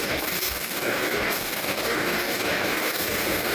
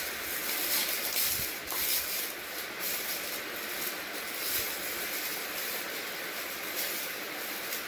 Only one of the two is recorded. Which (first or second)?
second